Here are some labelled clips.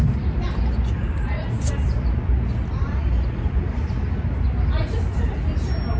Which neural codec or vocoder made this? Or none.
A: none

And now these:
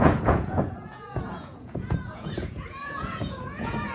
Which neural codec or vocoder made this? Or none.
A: vocoder, Vocos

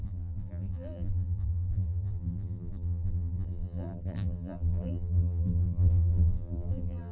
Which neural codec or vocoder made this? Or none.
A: vocoder, BigVGAN v2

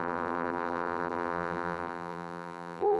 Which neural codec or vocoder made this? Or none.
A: vocoder, BigVGAN v2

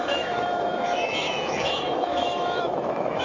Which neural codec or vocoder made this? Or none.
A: autoencoder, DAC-VAE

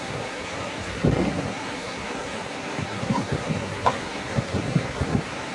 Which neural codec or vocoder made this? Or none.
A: codec, SNAC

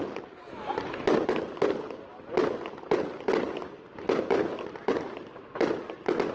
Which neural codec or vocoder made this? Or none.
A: none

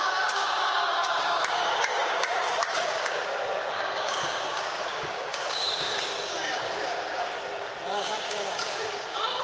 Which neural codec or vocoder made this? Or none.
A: codec, DAC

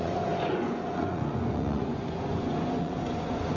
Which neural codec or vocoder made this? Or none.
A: vocoder, Vocos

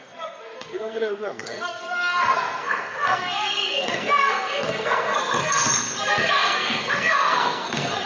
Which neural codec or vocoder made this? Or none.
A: codec, SNAC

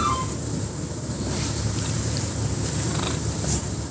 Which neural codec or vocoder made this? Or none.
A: vocoder, BigVGAN v2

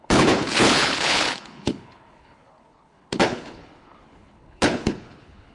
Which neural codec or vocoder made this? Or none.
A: codec, HILCodec